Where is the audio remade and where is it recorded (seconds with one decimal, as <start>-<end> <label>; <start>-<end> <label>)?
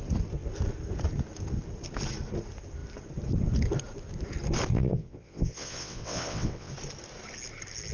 0.0-4.7 recorded; 4.7-6.7 remade; 6.7-7.9 recorded